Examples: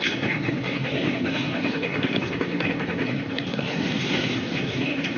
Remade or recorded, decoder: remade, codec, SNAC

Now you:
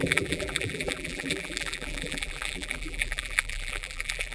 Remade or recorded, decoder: remade, vocoder, BigVGAN v2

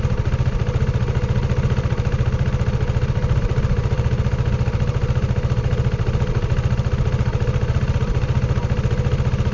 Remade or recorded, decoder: recorded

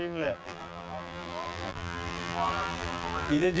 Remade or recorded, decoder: remade, vocoder, BigVGAN v2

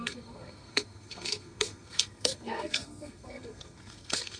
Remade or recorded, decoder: remade, codec, SNAC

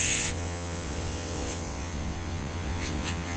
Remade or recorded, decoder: remade, vocoder, WaveNeXt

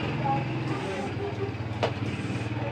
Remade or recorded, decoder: recorded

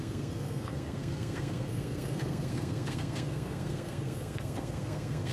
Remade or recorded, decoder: remade, codec, SNAC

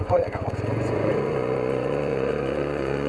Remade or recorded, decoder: remade, vocoder, Vocos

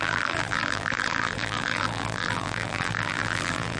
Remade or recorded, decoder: remade, vocoder, BigVGAN v2